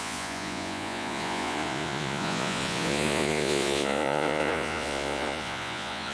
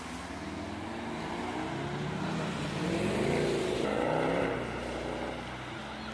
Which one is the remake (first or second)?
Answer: first